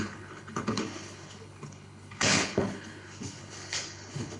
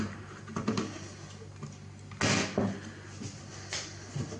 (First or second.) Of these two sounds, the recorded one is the second